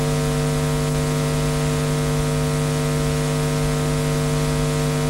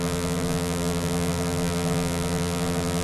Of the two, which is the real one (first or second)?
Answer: first